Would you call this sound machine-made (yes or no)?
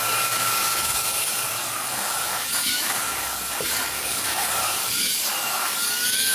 yes